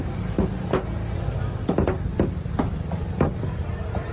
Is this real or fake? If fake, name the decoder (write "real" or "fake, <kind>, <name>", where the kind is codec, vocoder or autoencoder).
real